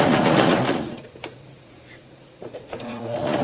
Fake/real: fake